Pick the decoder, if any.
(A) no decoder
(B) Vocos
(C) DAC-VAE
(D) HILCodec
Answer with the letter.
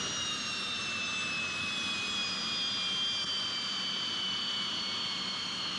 A